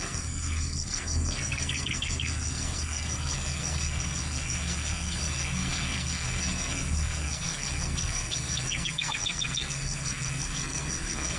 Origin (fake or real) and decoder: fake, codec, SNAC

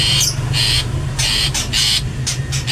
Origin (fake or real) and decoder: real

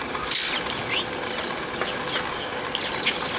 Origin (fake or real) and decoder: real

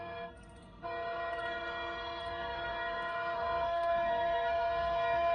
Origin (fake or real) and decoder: fake, codec, SNAC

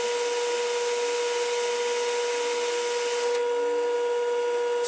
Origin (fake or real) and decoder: real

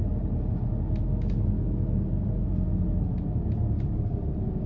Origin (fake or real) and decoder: real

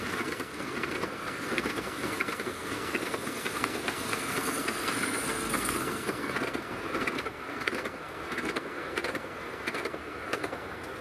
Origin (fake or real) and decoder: fake, codec, SNAC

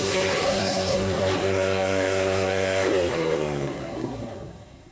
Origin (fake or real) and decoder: fake, codec, SNAC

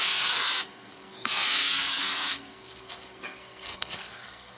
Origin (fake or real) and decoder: fake, codec, SNAC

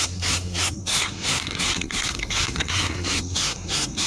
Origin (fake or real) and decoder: fake, codec, SNAC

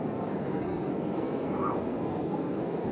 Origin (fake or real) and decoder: fake, codec, SNAC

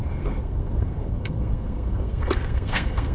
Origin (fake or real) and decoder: fake, codec, SNAC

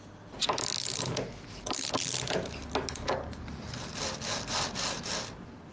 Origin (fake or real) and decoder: real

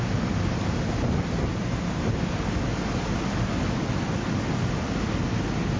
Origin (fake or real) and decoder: real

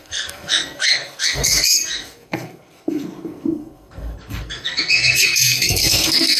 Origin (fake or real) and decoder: fake, codec, SNAC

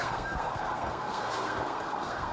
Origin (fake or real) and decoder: fake, codec, SNAC